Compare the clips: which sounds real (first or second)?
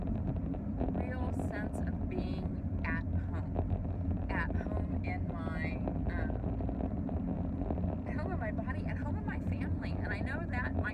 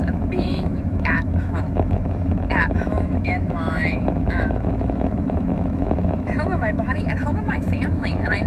first